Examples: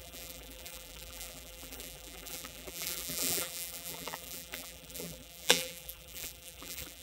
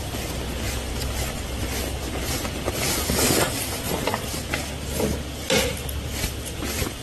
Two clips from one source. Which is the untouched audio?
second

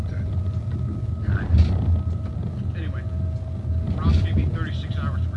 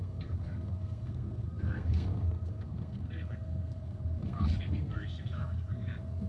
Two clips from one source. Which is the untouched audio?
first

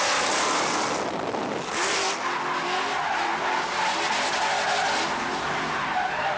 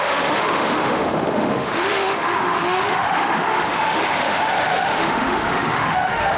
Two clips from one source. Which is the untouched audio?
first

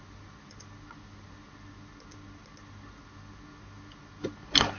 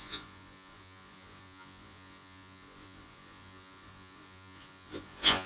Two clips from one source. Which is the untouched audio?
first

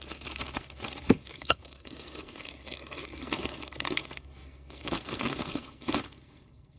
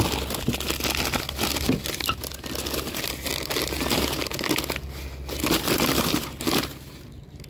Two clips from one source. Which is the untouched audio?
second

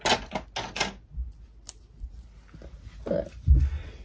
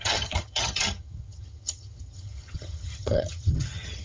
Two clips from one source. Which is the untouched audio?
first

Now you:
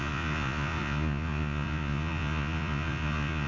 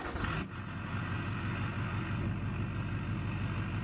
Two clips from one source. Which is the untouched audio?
second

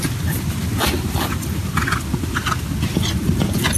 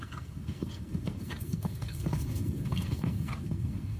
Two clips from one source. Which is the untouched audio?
first